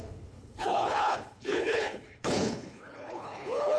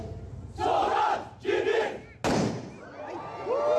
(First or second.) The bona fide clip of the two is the second